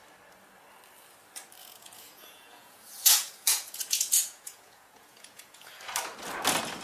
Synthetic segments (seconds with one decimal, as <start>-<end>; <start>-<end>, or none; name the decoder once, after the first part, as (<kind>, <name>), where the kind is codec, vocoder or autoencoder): 1.6-5.7 (vocoder, Vocos)